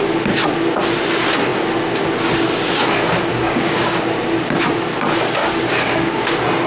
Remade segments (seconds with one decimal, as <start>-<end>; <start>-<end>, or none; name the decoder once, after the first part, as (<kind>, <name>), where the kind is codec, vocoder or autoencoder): 3.3-4.0 (codec, DAC); 5.4-6.2